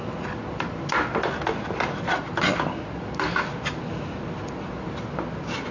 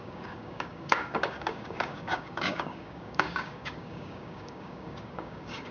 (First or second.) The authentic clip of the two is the first